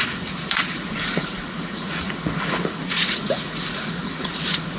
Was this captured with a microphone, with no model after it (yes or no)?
no